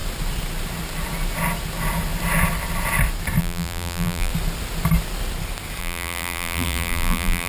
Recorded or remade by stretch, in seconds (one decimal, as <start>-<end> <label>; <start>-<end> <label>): 0.0-3.4 recorded; 3.4-4.3 remade; 4.3-5.8 recorded; 5.8-7.5 remade